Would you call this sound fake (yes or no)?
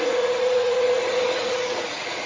yes